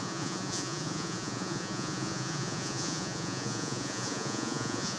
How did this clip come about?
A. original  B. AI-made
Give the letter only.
B